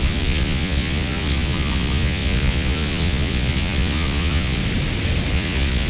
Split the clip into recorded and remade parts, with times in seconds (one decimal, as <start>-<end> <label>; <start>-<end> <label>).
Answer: 0.0-4.6 remade; 4.6-5.3 recorded; 5.3-5.9 remade